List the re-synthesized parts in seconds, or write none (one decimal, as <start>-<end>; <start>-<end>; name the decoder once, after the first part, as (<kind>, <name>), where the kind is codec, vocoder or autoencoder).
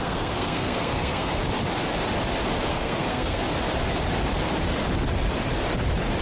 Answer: 0.0-1.4 (codec, SNAC); 2.7-3.4